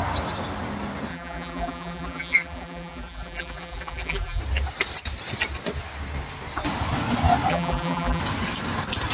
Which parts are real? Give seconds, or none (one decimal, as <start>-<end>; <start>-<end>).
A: 0.0-1.1; 4.4-7.5; 8.2-9.1